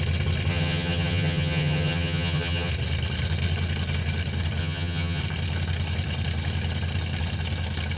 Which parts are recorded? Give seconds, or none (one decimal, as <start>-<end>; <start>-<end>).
0.0-0.5; 2.7-4.6; 5.2-8.0